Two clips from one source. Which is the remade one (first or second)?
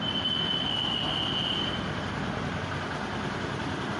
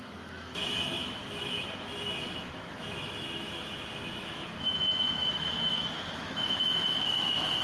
second